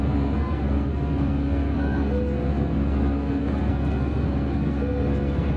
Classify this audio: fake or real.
fake